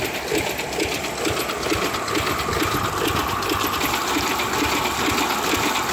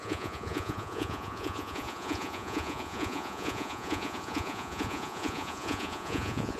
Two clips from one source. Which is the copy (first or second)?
second